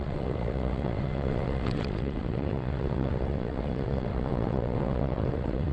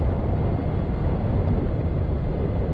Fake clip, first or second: first